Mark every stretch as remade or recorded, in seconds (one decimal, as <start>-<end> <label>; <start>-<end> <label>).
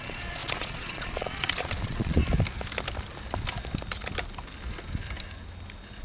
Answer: 0.0-2.2 remade; 2.2-6.0 recorded